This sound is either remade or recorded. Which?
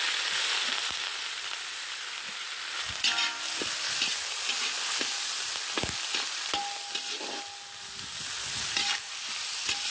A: recorded